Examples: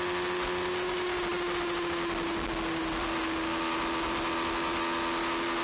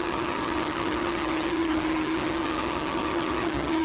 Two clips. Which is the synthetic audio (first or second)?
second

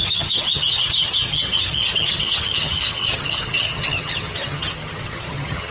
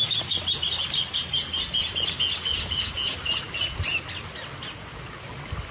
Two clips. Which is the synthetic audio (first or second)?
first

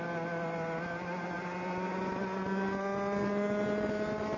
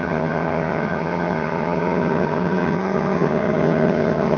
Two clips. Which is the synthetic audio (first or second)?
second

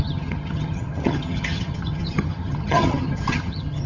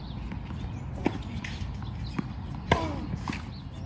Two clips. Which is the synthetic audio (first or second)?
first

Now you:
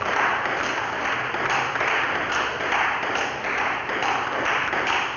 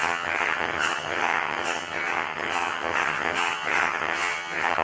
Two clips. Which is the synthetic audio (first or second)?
second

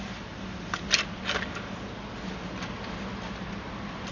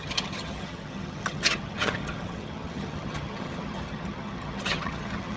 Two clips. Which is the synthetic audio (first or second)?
second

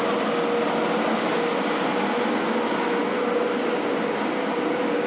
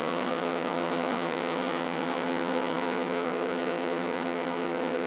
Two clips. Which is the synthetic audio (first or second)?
second